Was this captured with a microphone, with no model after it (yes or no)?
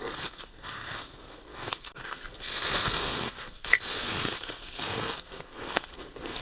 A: no